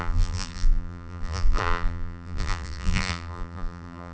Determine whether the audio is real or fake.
fake